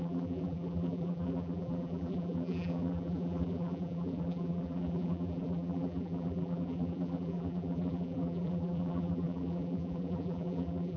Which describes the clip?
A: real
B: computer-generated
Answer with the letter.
B